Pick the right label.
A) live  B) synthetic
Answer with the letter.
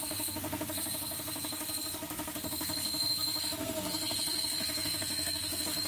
B